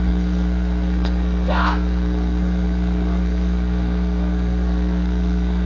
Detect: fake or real fake